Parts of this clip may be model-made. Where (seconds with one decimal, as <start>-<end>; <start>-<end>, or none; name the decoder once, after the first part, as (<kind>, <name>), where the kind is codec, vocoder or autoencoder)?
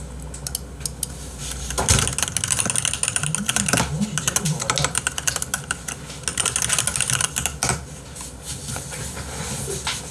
none